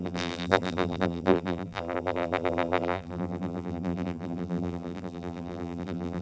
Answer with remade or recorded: remade